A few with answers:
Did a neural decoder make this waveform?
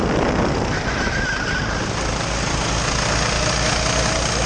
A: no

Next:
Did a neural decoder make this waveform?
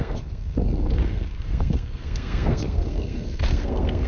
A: yes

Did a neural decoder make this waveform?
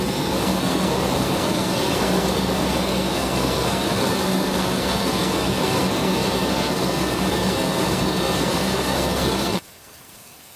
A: yes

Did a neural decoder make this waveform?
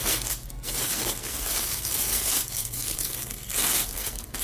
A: yes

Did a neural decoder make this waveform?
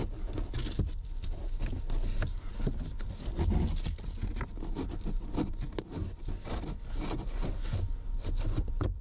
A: no